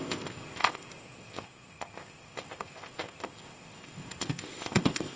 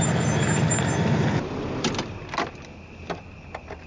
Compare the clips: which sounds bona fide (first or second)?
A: second